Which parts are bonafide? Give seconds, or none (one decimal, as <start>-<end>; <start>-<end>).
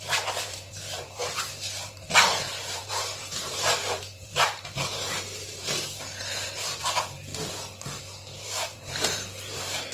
7.3-8.0